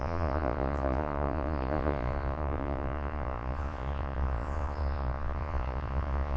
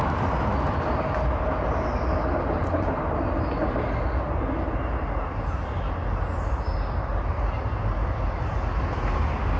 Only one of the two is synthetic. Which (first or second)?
first